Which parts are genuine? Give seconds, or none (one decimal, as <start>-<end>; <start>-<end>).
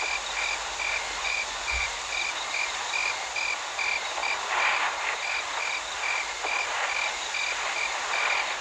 0.0-1.2; 1.9-8.6